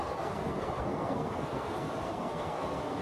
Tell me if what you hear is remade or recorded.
remade